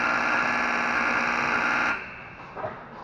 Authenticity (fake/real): real